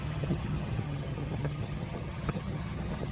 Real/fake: fake